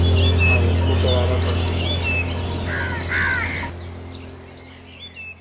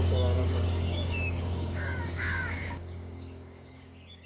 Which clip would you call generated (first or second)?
second